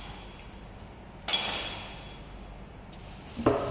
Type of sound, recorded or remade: recorded